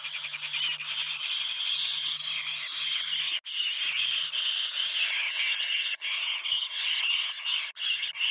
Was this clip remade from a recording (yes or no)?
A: no